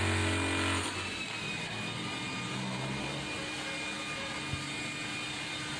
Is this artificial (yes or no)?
no